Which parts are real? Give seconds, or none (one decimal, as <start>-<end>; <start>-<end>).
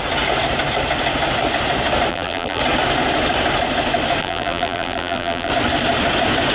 0.0-2.1; 2.6-4.2; 5.5-6.5